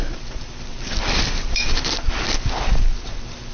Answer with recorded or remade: remade